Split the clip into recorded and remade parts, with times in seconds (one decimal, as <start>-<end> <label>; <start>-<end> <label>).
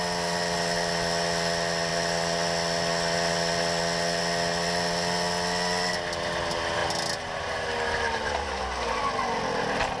0.0-10.0 recorded